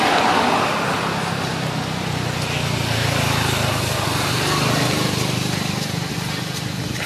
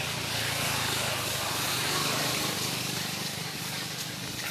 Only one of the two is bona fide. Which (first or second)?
first